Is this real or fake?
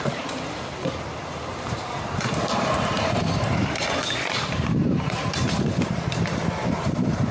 fake